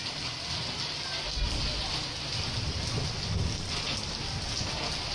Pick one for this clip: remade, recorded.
recorded